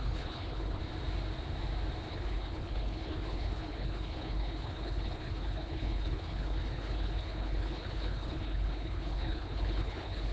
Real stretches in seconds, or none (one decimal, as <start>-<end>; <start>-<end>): 0.8-2.1